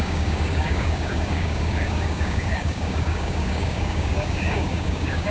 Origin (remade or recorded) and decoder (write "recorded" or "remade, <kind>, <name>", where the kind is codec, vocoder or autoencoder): remade, codec, DAC